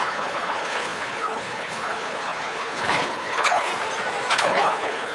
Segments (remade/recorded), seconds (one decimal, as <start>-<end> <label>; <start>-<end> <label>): 0.0-3.7 remade; 3.7-4.3 recorded; 4.3-5.1 remade